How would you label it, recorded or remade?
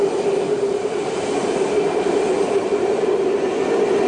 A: recorded